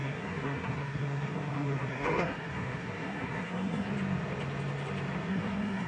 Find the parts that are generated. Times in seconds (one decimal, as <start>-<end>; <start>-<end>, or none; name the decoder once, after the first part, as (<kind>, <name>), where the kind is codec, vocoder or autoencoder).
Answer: 0.0-3.9 (codec, SNAC); 5.3-5.9